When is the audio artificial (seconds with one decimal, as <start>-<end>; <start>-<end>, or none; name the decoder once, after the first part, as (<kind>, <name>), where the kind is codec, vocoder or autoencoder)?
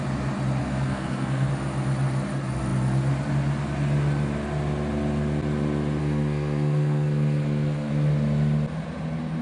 0.6-1.5 (codec, SNAC); 6.0-7.9